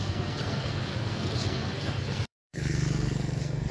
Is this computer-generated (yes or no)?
yes